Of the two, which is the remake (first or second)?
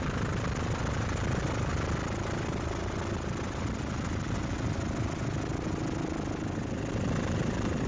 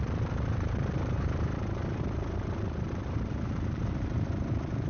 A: second